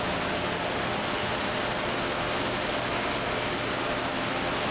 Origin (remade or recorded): recorded